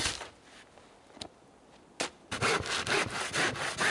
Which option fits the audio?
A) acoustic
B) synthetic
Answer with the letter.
A